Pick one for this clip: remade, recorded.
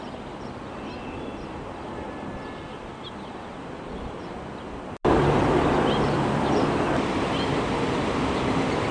recorded